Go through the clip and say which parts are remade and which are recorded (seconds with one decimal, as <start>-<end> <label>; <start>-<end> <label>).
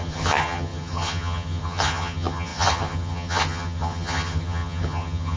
0.0-5.4 remade